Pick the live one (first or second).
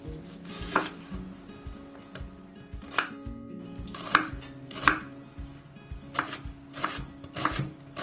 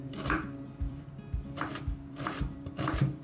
first